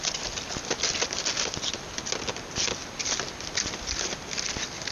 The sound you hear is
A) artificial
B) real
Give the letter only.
B